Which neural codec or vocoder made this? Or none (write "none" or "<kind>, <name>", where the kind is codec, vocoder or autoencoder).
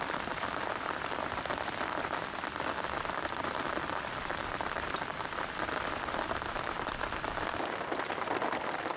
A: vocoder, BigVGAN v2